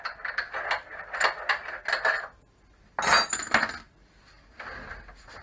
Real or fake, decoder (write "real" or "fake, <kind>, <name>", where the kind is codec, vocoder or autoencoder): real